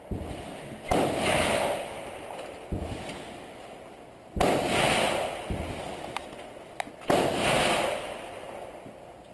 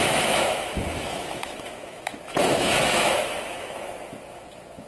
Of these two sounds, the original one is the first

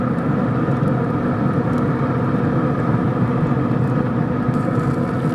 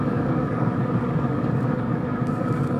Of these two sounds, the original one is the first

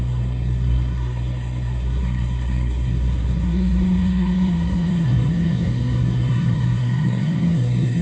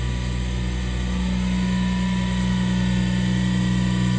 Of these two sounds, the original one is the second